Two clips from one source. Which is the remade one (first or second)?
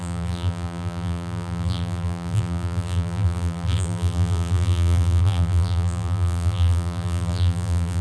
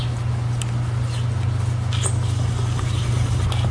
first